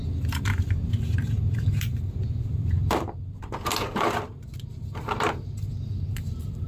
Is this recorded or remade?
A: remade